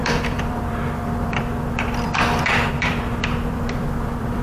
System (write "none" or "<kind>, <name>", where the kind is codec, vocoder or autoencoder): vocoder, BigVGAN v2